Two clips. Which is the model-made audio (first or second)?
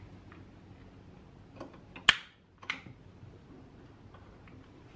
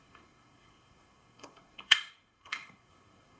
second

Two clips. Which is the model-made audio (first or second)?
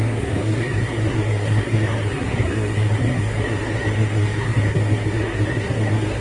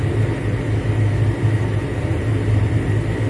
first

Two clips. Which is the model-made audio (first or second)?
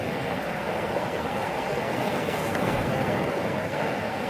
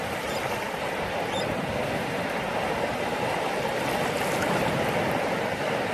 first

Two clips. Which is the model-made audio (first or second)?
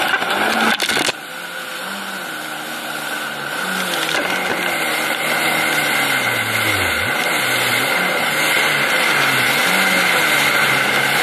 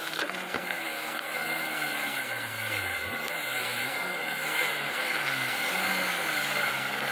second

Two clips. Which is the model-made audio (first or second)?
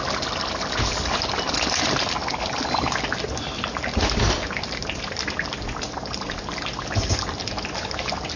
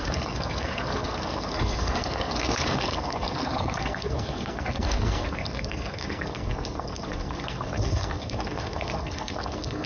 second